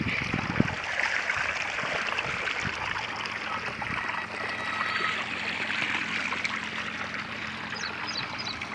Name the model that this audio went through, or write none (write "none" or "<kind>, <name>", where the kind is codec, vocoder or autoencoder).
none